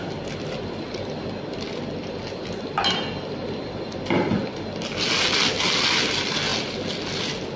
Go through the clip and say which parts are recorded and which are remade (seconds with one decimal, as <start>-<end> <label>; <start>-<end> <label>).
0.0-7.6 recorded